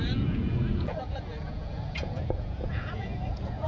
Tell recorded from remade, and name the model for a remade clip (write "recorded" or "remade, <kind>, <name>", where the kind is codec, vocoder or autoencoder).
remade, vocoder, Vocos